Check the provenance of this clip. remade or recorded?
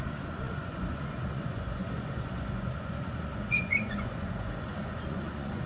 remade